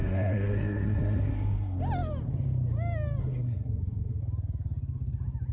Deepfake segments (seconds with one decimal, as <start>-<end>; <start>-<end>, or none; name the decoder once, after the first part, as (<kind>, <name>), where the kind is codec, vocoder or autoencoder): 0.0-1.8 (codec, SNAC); 3.2-4.2